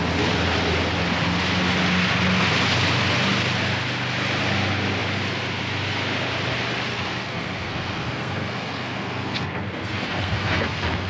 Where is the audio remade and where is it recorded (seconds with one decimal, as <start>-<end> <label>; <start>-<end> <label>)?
0.0-6.9 recorded; 6.9-11.1 remade